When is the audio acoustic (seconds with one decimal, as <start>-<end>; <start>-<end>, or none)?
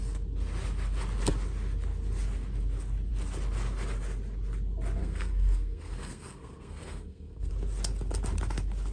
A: 0.0-5.0; 7.5-8.9